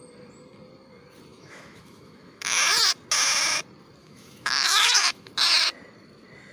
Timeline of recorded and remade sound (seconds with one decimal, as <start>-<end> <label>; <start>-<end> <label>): 0.0-1.3 recorded; 1.3-2.6 remade; 2.6-4.0 recorded; 4.0-5.3 remade; 5.3-6.5 recorded